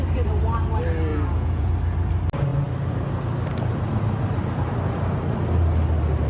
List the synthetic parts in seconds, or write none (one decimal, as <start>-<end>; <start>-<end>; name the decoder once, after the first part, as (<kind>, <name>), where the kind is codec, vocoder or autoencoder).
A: 1.1-1.7 (vocoder, Vocos)